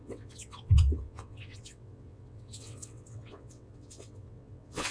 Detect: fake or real fake